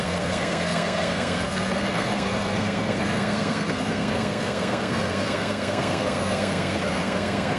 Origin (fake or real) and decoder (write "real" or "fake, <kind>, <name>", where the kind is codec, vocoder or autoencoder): fake, codec, SNAC